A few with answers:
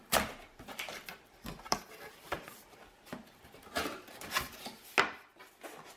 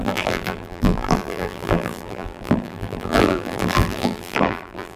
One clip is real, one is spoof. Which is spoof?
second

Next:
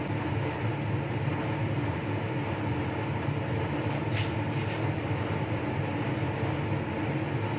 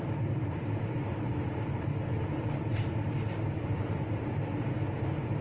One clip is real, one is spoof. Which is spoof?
second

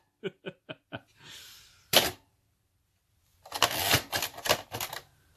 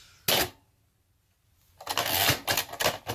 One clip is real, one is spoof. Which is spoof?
first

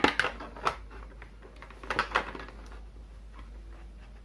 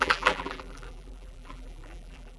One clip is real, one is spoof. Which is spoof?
second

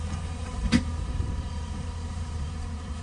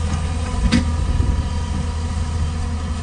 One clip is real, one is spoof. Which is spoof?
first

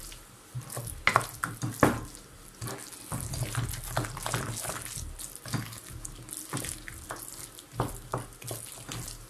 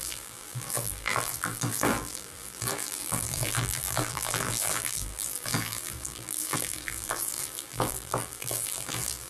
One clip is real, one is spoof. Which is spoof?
second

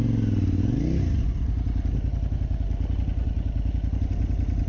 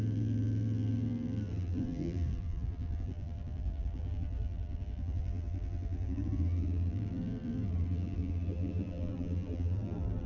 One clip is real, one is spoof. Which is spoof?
second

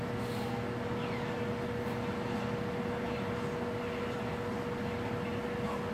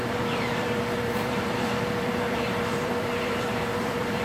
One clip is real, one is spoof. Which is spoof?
second